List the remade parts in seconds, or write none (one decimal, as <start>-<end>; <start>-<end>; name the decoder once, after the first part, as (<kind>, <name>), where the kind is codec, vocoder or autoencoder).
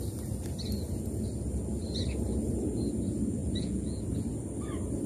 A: 3.4-4.0 (vocoder, Vocos)